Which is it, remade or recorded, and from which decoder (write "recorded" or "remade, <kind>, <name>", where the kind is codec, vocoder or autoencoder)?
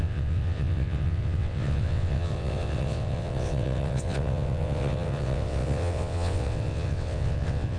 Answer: remade, vocoder, WaveNeXt